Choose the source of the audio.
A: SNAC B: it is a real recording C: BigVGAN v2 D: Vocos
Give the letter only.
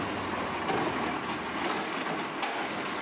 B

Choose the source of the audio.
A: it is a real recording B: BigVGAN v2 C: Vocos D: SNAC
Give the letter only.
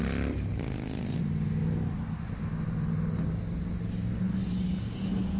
A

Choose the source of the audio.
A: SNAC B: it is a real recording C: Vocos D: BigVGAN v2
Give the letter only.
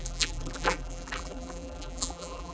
D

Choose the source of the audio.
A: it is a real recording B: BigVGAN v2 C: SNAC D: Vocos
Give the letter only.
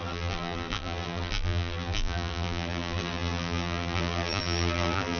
B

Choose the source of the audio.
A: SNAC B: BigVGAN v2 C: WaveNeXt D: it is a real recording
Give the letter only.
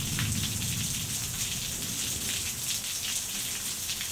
D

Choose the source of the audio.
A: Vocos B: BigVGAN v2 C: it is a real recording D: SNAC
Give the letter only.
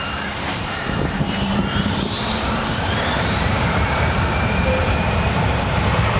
B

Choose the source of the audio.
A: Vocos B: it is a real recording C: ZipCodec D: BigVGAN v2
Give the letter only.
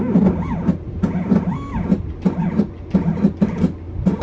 B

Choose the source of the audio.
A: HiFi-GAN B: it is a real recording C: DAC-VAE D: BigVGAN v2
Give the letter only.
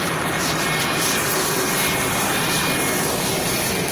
B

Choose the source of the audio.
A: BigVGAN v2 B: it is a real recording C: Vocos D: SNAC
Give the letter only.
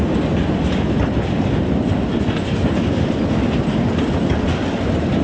B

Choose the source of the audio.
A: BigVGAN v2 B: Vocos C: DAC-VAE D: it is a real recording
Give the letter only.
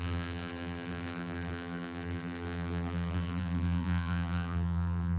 A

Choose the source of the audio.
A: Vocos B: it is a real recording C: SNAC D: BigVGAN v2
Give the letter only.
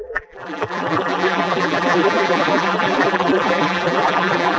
D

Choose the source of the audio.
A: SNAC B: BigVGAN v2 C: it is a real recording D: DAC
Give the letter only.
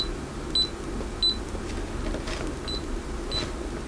C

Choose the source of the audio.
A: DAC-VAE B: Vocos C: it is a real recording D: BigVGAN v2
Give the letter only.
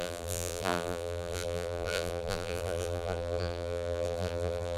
D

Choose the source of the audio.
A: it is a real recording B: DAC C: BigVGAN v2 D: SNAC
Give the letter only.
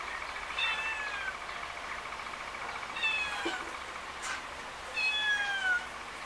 A